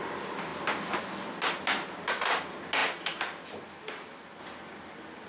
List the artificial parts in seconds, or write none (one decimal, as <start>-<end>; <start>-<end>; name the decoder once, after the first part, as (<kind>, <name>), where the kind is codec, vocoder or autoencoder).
none